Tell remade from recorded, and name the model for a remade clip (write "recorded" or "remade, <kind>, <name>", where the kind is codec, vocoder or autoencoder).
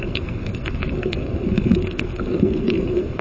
remade, codec, SNAC